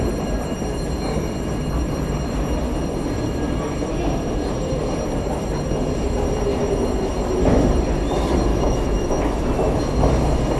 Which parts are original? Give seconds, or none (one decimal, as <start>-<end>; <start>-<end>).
0.0-8.5; 9.8-10.6